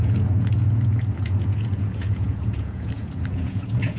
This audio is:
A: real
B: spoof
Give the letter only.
B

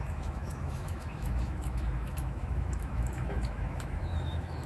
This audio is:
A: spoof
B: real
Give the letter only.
A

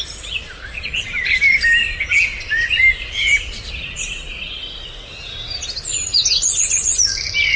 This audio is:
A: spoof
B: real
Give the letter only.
B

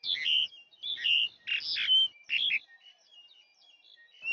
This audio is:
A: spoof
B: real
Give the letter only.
B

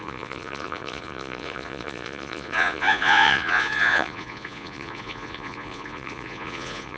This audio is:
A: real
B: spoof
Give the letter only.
B